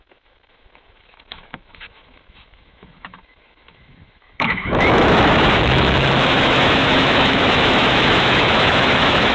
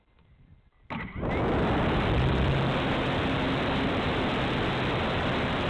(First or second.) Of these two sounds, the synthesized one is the first